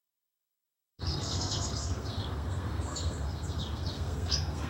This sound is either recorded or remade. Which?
remade